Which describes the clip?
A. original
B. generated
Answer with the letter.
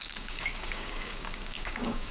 B